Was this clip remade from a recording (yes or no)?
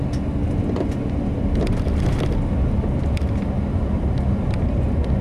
no